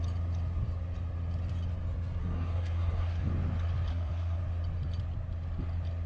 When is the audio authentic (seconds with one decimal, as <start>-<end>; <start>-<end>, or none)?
0.0-2.2; 3.3-3.9; 4.4-6.1